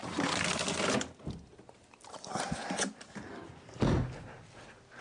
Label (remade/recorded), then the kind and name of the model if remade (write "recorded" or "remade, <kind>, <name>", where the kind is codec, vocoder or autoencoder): recorded